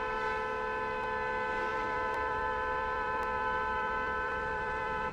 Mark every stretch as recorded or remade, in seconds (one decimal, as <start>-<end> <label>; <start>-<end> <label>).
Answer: 0.0-1.7 recorded; 1.7-5.1 remade